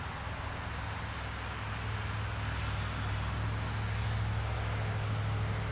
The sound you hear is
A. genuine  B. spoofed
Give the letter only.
A